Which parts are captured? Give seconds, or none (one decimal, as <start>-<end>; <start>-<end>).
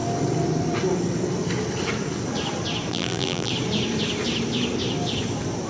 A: 0.0-2.9; 3.5-5.7